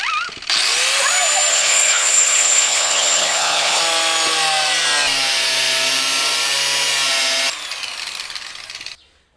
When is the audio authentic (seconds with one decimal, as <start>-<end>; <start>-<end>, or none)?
0.0-1.5; 3.8-9.4